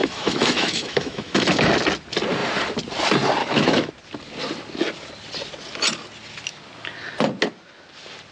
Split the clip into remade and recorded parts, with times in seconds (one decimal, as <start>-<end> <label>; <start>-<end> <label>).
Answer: 0.0-1.7 remade; 1.7-3.4 recorded; 3.4-3.9 remade; 3.9-8.3 recorded